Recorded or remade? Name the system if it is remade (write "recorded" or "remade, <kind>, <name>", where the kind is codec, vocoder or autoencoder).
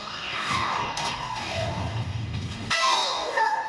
remade, codec, DAC